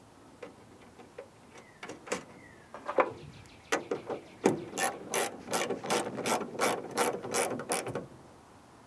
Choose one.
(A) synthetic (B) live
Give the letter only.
B